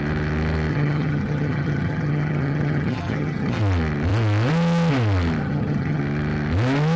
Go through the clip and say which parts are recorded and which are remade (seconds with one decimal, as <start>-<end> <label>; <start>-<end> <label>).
0.0-0.7 recorded; 0.7-3.6 remade; 3.6-5.4 recorded; 5.4-6.0 remade; 6.0-7.0 recorded